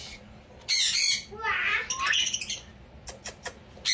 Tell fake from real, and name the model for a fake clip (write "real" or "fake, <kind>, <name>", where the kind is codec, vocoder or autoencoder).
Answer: real